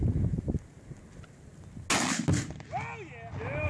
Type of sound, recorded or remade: recorded